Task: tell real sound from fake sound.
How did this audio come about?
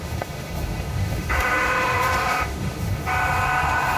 fake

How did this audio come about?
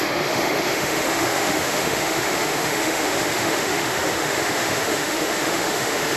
fake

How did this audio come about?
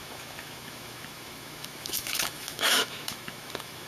fake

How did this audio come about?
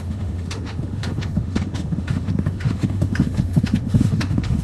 fake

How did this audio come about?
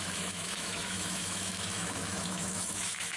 fake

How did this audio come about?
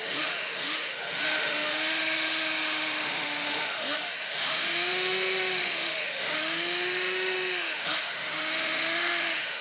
fake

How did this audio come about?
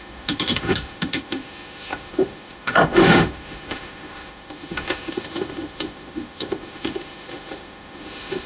fake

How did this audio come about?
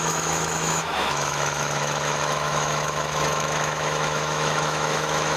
fake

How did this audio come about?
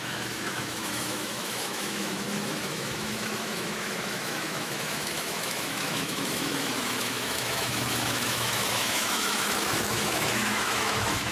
fake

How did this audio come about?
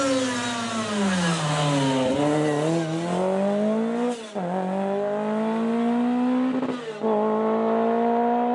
real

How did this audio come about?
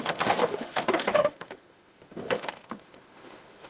fake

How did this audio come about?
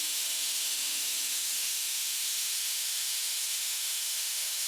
fake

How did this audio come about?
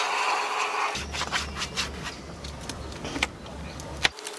real